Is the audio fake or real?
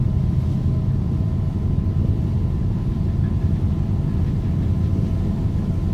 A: real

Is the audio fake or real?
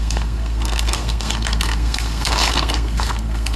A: fake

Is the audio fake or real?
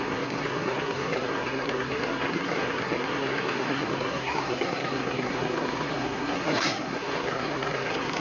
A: fake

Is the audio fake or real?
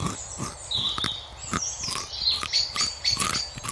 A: real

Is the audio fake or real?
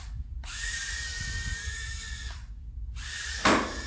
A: real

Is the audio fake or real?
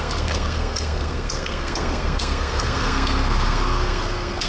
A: fake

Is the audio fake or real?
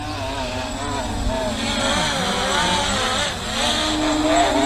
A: real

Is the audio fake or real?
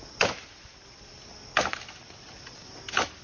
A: real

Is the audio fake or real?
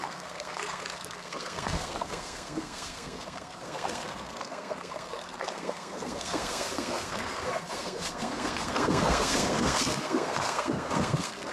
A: fake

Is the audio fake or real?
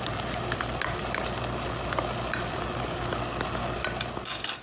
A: real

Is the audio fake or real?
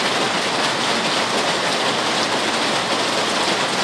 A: real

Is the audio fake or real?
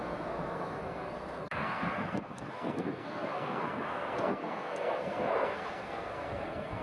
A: fake